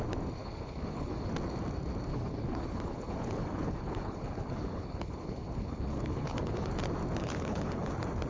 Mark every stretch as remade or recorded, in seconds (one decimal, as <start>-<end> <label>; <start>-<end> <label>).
0.0-0.4 recorded; 0.4-1.3 remade; 1.3-2.1 recorded; 2.1-6.7 remade; 6.7-7.2 recorded; 7.2-7.9 remade; 7.9-8.3 recorded